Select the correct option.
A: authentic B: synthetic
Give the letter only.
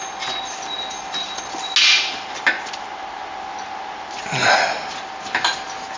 A